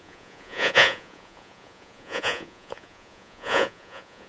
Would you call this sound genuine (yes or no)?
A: no